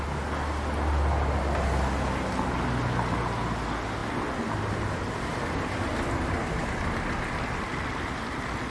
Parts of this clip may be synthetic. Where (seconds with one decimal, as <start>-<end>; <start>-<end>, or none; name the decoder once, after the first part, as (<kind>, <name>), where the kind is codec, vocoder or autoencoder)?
none